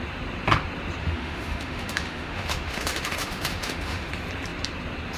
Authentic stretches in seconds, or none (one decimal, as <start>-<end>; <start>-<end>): 0.0-1.0; 4.1-5.2